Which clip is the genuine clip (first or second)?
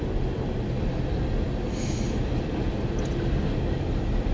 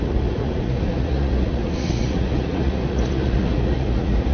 first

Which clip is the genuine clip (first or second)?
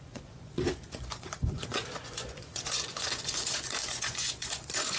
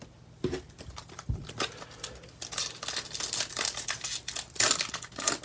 second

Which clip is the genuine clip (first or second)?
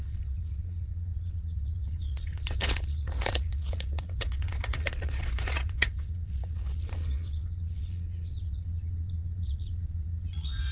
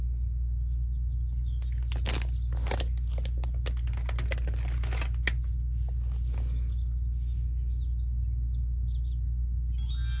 second